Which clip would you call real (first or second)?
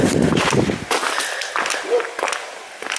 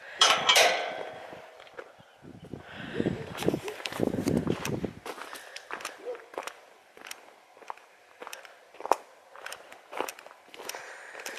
first